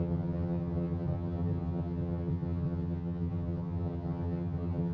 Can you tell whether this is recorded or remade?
remade